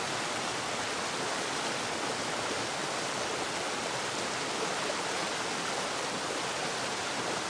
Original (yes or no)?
yes